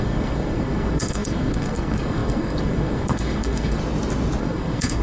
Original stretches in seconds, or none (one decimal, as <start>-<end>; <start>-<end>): 3.8-4.4